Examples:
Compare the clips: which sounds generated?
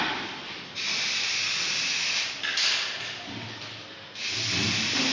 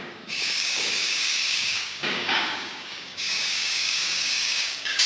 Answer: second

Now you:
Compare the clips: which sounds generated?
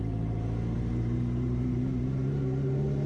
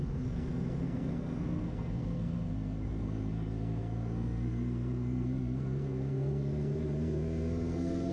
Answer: second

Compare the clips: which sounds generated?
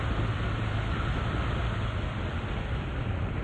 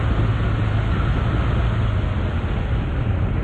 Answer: first